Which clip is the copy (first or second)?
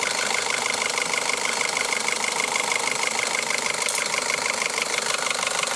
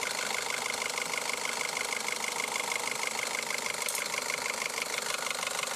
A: first